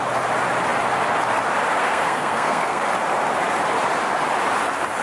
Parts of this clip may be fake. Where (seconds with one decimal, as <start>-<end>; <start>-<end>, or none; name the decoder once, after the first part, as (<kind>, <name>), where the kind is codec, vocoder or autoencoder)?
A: 1.8-2.8 (codec, SNAC)